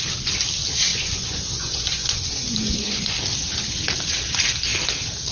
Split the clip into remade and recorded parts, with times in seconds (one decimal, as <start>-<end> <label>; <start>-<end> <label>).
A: 0.0-0.9 recorded; 0.9-3.2 remade; 3.2-5.3 recorded